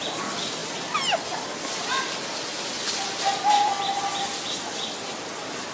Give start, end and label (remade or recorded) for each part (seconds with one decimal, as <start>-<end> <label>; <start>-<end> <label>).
0.0-5.7 recorded